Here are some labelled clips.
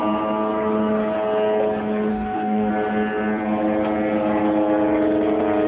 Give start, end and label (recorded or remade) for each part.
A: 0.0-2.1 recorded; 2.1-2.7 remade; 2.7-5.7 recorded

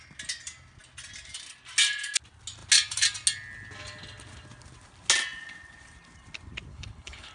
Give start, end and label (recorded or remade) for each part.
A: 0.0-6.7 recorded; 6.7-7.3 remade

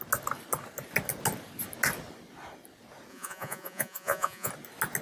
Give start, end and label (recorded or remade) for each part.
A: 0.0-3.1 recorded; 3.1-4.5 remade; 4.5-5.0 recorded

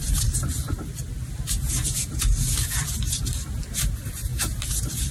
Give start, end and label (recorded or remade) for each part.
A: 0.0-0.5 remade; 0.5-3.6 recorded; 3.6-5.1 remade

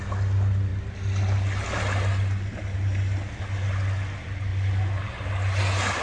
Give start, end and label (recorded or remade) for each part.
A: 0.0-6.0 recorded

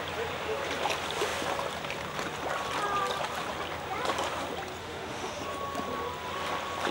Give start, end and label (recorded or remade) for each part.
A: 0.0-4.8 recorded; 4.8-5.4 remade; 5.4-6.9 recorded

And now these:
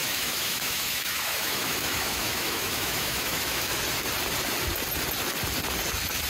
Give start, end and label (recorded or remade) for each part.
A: 0.0-3.8 remade; 3.8-6.3 recorded

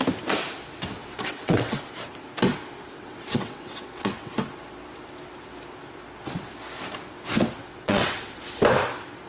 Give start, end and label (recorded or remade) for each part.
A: 0.0-1.0 recorded; 1.0-1.8 remade; 1.8-2.9 recorded; 2.9-4.3 remade; 4.3-7.6 recorded; 7.6-8.4 remade; 8.4-9.3 recorded